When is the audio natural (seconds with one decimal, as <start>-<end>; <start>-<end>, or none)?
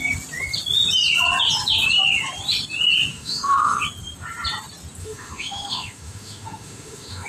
0.0-3.1; 3.8-5.0